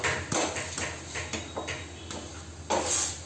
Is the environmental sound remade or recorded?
recorded